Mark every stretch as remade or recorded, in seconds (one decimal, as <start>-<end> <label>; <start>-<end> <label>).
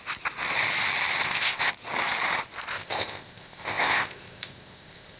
0.0-1.2 recorded; 1.2-1.7 remade; 1.7-2.7 recorded; 2.7-5.2 remade